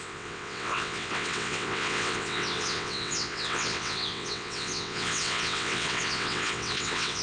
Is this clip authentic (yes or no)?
no